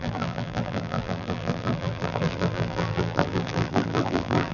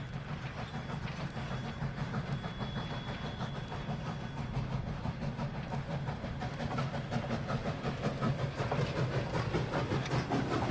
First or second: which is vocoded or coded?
first